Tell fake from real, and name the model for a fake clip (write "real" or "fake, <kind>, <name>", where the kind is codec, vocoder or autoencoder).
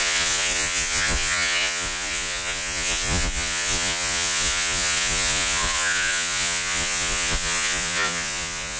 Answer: fake, vocoder, Vocos